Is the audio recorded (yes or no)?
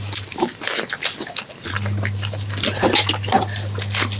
yes